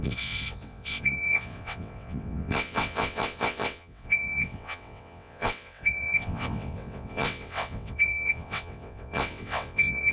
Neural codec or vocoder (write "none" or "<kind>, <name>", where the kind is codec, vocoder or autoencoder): vocoder, WaveNeXt